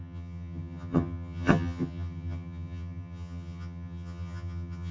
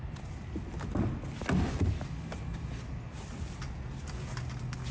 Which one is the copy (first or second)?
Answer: first